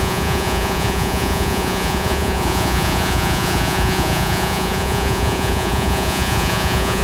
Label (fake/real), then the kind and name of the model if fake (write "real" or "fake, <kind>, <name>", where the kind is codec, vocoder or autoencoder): fake, vocoder, Vocos